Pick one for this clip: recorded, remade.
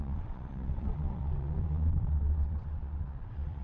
remade